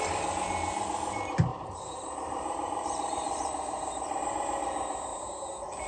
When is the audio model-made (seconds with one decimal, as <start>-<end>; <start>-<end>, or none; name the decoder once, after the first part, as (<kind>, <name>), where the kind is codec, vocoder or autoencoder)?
1.5-4.2 (vocoder, BigVGAN v2)